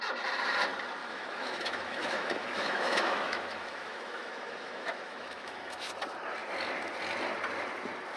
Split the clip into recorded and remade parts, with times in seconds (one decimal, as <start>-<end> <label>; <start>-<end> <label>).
0.0-1.0 recorded; 1.0-5.9 remade; 5.9-8.2 recorded